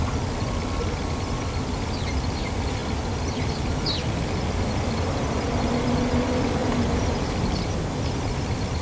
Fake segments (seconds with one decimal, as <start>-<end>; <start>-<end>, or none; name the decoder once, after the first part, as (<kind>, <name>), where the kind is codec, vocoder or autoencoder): 6.6-7.8 (vocoder, BigVGAN v2)